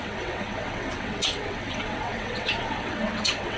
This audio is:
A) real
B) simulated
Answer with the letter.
B